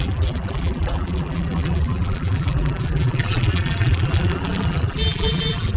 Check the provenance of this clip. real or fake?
fake